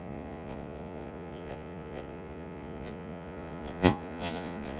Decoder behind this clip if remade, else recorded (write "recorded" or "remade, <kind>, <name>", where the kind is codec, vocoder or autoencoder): remade, vocoder, Vocos